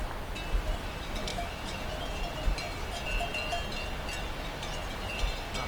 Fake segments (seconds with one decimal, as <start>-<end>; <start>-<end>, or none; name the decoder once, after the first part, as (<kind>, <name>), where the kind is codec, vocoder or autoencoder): 1.3-1.8 (autoencoder, DAC-VAE)